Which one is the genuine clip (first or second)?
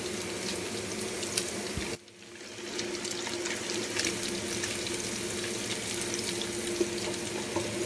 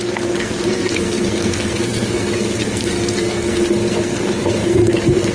first